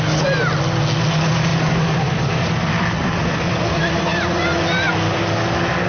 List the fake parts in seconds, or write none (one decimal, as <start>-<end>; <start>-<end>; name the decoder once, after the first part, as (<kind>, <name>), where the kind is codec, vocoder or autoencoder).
1.5-3.6 (vocoder, BigVGAN v2); 4.1-4.9